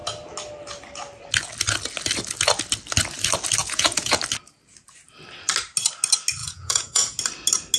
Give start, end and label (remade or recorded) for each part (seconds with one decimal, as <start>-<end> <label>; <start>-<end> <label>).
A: 0.0-3.6 recorded; 3.6-4.2 remade; 4.2-6.4 recorded; 6.4-7.2 remade; 7.2-7.8 recorded